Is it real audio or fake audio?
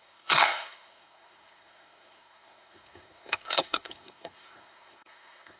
fake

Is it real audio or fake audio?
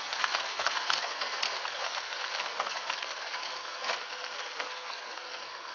fake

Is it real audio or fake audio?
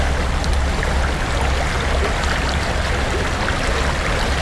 real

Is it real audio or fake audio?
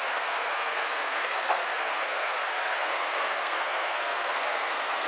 fake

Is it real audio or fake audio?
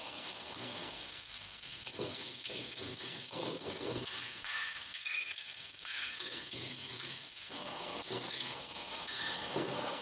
fake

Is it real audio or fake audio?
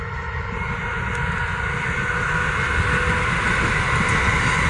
real